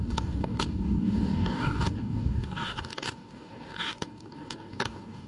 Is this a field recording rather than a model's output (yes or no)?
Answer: no